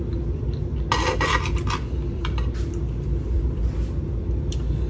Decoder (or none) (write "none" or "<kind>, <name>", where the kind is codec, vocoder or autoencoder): none